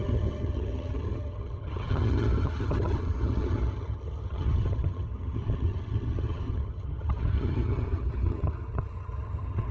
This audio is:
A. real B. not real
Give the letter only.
B